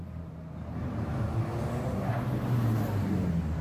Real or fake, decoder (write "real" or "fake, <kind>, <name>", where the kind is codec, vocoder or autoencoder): real